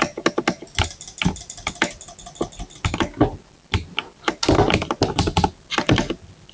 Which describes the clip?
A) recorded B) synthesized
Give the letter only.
A